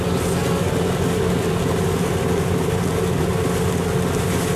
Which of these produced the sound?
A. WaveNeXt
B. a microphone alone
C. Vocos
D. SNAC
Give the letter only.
B